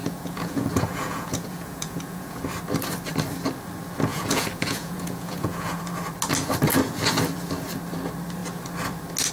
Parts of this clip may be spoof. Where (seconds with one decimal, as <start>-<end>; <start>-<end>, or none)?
0.0-2.4; 4.1-5.8